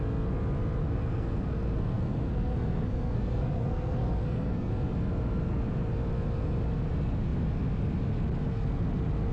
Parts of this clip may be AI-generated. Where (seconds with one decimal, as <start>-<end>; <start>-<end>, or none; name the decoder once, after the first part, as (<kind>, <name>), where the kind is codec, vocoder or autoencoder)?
0.8-4.7 (codec, SNAC)